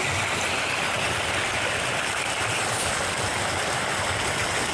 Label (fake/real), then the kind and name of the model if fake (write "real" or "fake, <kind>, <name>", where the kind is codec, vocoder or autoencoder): real